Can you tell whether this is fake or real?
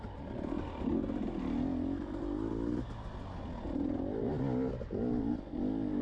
real